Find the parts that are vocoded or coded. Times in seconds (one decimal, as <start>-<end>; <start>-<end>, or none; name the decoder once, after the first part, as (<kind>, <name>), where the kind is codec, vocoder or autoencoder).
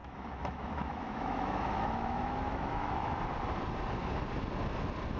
0.0-3.1 (autoencoder, DAC-VAE)